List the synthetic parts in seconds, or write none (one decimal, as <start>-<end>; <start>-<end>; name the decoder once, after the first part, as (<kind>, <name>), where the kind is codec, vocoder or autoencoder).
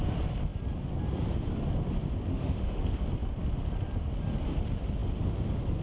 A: 2.3-2.8 (autoencoder, DAC-VAE)